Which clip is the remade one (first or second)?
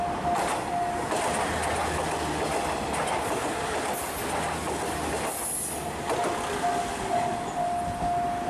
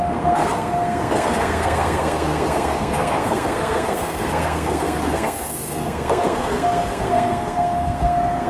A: second